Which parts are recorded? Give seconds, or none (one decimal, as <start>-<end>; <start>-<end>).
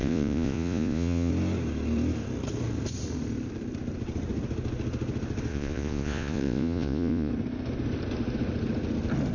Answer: 1.3-5.5; 7.3-9.3